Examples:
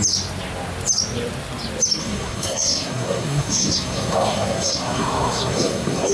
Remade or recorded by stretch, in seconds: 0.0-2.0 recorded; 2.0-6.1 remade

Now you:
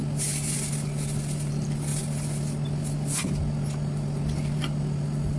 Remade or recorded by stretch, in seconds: 0.0-5.4 recorded

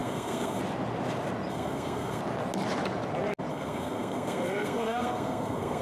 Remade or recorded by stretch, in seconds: 0.0-0.6 remade; 0.6-1.5 recorded; 1.5-2.2 remade; 2.2-3.5 recorded; 3.5-5.8 remade

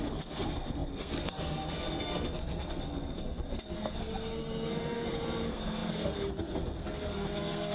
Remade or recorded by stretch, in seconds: 0.0-7.7 remade

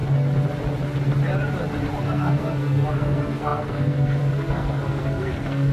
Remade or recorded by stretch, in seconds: 0.0-2.0 recorded; 2.0-5.7 remade

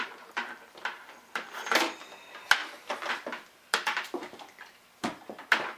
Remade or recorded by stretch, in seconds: 0.0-5.8 recorded